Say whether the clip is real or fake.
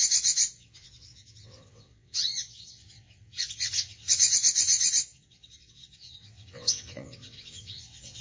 fake